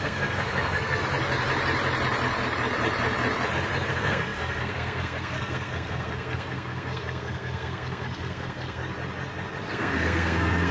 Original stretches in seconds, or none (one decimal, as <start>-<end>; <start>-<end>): 1.0-3.9; 8.8-9.7